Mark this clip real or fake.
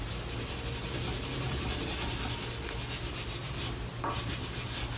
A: real